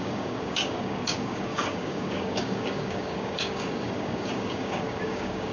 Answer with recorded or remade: remade